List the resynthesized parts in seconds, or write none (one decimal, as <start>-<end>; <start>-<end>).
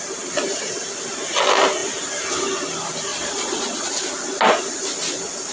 3.1-3.9